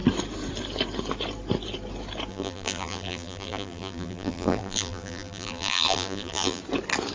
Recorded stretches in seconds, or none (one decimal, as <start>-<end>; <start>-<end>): 0.0-2.3; 6.6-7.1